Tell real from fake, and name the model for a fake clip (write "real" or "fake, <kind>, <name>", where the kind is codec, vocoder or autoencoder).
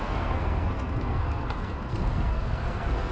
fake, codec, SNAC